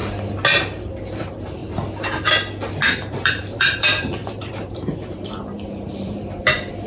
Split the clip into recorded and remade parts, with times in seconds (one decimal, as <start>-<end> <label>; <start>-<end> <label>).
0.0-1.2 recorded; 1.2-1.6 remade; 1.6-2.9 recorded; 2.9-6.9 remade